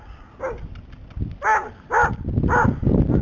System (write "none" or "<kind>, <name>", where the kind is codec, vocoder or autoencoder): none